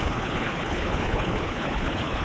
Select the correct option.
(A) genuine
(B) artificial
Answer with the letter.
B